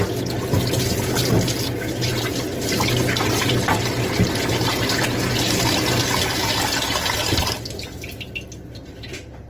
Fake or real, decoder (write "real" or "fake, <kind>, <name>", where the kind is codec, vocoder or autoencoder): real